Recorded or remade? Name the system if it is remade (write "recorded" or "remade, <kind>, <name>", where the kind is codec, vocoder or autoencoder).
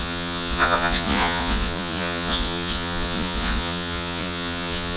remade, vocoder, Vocos